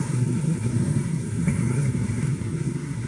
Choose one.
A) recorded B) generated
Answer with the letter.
B